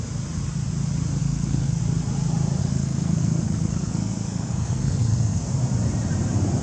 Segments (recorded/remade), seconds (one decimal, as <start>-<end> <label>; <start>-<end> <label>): 0.0-1.2 recorded; 1.2-1.8 remade; 1.8-2.6 recorded; 2.6-5.5 remade; 5.5-6.6 recorded